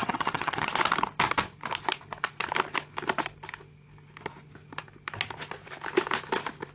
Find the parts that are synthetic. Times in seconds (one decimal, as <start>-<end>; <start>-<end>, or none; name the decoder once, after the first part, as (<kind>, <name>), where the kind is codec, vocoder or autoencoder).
0.0-0.7 (vocoder, HiFi-GAN)